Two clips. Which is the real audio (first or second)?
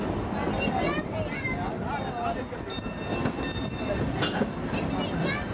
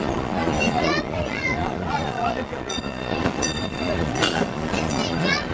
first